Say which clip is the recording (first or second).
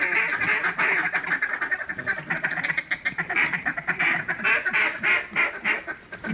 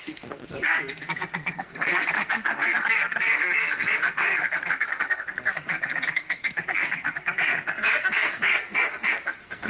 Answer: first